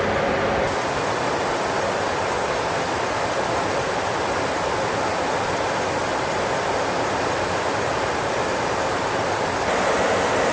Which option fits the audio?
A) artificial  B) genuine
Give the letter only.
A